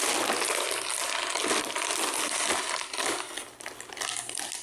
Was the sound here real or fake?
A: real